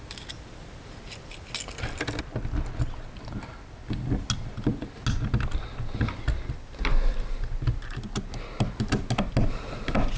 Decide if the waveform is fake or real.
real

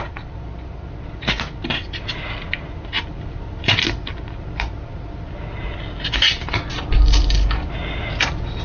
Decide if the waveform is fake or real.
real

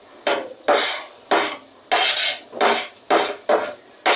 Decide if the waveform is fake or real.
real